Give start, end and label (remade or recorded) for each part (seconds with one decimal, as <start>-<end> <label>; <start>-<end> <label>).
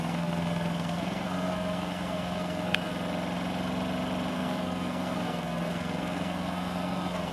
0.0-2.9 remade; 2.9-4.3 recorded; 4.3-7.3 remade